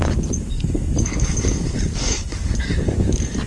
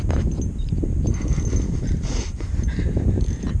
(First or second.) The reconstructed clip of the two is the first